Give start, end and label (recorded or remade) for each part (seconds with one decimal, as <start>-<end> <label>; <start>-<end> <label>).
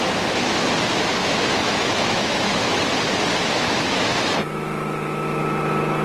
0.0-1.2 recorded; 1.2-2.8 remade; 2.8-3.4 recorded; 3.4-5.4 remade; 5.4-6.0 recorded